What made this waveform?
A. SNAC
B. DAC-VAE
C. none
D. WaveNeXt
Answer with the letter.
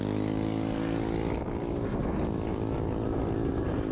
C